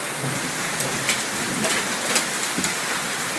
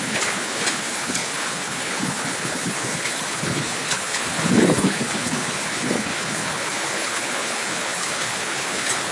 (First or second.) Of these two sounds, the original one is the first